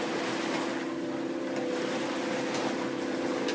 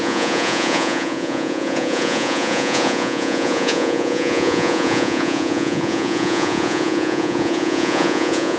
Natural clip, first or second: first